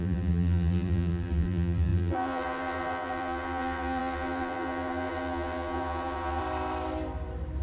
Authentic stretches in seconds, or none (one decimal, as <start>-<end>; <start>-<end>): 6.4-7.6

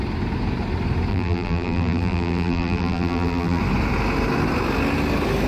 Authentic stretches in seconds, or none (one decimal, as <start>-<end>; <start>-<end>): 0.0-1.1; 3.6-5.5

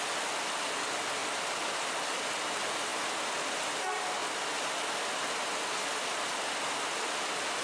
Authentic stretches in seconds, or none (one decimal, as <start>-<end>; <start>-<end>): 0.0-7.6

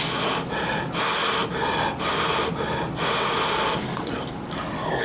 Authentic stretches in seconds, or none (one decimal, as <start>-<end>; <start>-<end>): 0.0-5.0

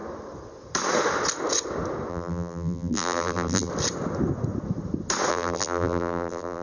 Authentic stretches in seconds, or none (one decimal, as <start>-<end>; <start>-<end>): 0.0-2.1; 3.7-5.3

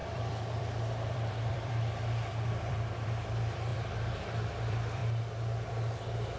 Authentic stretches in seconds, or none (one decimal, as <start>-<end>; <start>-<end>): 5.0-5.7

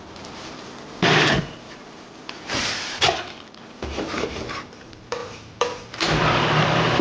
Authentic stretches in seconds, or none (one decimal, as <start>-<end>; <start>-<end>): none